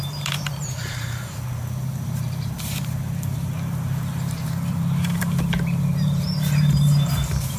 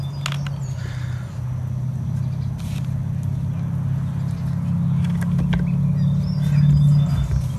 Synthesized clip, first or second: first